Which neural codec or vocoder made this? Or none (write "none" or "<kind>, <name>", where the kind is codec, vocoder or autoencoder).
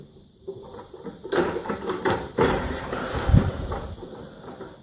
vocoder, BigVGAN v2